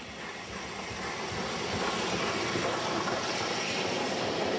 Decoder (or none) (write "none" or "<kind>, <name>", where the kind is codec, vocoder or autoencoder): none